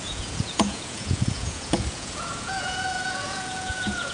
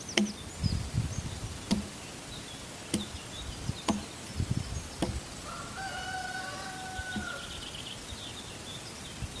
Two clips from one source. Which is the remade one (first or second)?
first